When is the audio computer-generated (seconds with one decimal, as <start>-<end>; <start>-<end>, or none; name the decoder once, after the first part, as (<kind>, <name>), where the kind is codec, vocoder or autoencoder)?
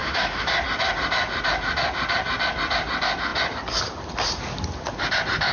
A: 0.0-0.5 (autoencoder, DAC-VAE)